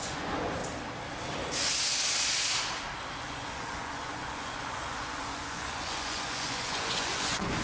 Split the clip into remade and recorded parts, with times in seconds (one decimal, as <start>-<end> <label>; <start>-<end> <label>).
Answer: 0.0-0.6 remade; 0.6-3.2 recorded; 3.2-7.6 remade